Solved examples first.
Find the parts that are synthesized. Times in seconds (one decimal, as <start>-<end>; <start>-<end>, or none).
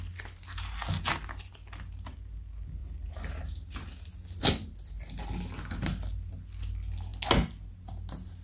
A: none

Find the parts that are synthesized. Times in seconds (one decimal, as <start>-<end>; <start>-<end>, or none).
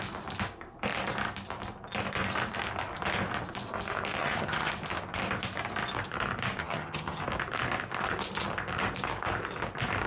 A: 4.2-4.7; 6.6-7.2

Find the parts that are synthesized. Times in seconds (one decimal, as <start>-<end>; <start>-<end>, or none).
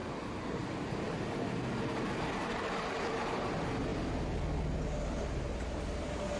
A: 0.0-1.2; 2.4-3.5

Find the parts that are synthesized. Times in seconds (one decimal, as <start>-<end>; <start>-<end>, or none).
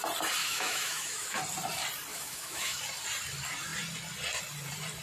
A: 0.4-1.4; 2.1-2.8